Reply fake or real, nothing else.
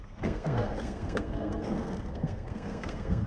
fake